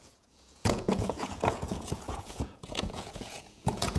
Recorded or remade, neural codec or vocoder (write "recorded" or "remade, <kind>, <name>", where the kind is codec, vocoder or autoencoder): remade, vocoder, Vocos